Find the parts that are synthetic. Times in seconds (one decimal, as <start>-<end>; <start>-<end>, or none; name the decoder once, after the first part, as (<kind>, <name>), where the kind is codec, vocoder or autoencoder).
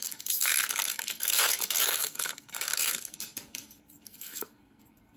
0.0-5.2 (codec, SNAC)